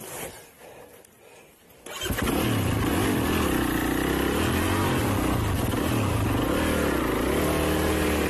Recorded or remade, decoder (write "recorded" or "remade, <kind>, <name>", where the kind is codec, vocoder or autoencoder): recorded